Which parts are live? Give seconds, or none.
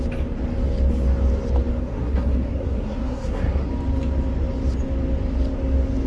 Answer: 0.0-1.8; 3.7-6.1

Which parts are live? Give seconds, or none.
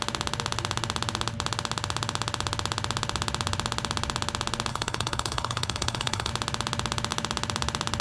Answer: 0.0-4.7; 6.3-8.0